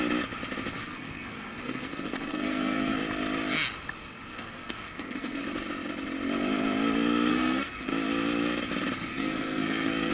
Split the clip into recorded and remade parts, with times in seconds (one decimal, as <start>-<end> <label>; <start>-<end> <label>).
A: 0.0-0.8 recorded; 0.8-3.0 remade; 3.0-4.3 recorded; 4.3-5.4 remade; 5.4-7.3 recorded; 7.3-7.9 remade; 7.9-9.1 recorded; 9.1-10.1 remade